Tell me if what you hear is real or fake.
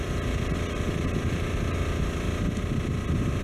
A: real